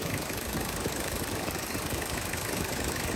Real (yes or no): no